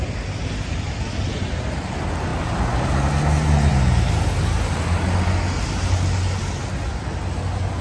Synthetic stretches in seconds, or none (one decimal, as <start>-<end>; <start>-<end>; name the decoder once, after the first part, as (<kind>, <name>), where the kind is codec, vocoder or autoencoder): none